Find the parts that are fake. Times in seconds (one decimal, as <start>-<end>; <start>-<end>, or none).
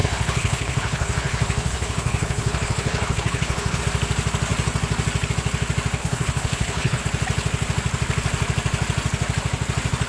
0.0-3.8; 6.0-7.0